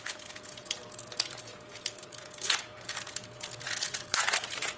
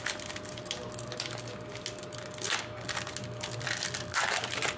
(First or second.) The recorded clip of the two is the second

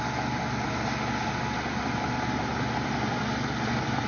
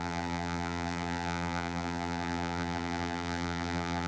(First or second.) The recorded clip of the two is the first